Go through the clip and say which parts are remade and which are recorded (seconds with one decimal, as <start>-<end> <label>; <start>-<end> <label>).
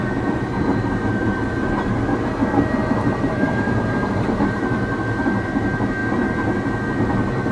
0.0-0.7 recorded; 0.7-1.5 remade; 1.5-2.8 recorded; 2.8-4.6 remade; 4.6-7.5 recorded